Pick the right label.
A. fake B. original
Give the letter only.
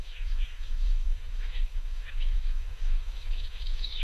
A